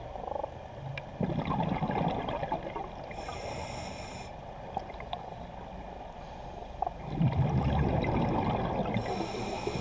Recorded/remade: recorded